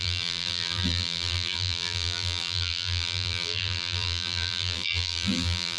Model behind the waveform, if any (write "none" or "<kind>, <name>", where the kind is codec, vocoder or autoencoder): vocoder, BigVGAN v2